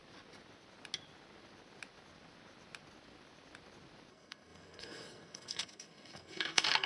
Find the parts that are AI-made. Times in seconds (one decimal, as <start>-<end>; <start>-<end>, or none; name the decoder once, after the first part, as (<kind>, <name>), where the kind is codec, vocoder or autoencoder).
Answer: 4.1-6.9 (codec, SNAC)